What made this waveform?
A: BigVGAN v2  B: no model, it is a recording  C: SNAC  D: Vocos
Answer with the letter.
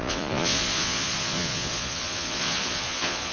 D